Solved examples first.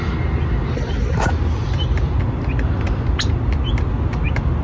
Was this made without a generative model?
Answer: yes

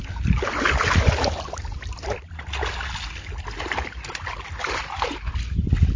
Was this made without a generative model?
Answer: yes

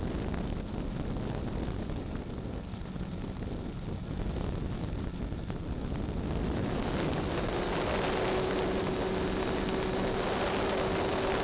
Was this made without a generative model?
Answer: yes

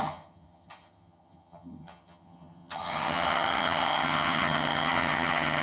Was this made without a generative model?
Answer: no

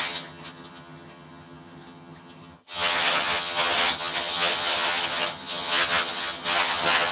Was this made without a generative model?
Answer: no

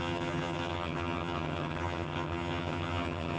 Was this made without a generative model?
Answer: no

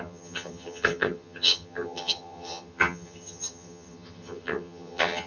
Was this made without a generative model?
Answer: no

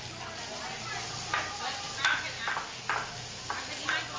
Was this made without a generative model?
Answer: yes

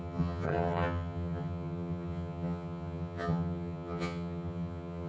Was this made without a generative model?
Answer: no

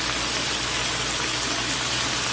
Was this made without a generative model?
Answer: yes